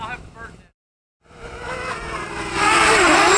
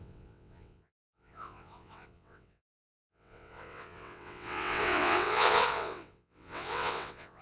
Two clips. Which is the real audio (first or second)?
first